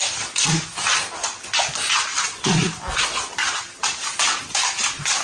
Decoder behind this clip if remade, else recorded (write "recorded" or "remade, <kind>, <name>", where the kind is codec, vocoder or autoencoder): recorded